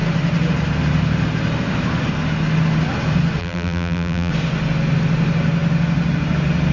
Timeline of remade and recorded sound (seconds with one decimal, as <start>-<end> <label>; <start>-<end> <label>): 0.0-3.4 recorded; 3.4-4.3 remade; 4.3-6.7 recorded